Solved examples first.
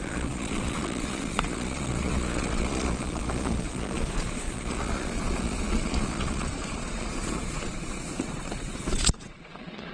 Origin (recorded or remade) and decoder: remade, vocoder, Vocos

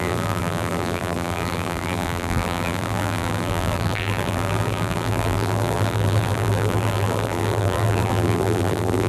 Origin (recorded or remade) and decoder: remade, vocoder, BigVGAN v2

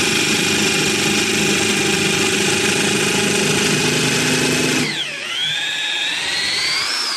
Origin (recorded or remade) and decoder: recorded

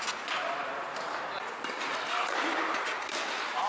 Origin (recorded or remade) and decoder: recorded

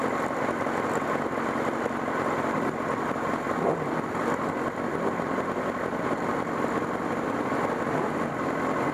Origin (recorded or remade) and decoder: recorded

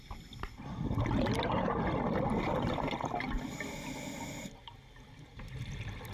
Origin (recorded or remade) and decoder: recorded